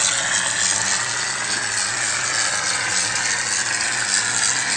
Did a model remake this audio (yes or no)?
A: no